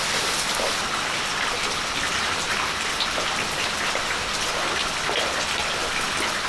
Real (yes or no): yes